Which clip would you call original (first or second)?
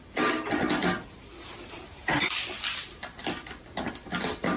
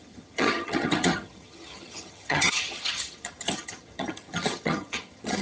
first